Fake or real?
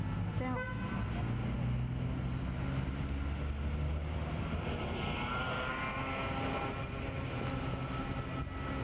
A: real